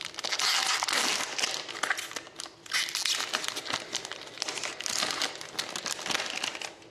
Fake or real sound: real